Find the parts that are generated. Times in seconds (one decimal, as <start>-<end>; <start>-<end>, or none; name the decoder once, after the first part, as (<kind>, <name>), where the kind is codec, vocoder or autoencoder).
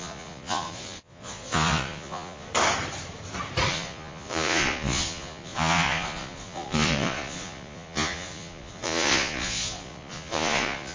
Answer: 0.0-2.5 (vocoder, Vocos); 3.7-10.9